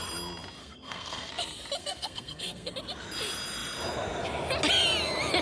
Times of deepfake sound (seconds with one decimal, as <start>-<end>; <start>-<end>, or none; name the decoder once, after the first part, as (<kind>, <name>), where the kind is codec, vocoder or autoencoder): 0.6-1.3 (codec, SNAC); 1.8-2.7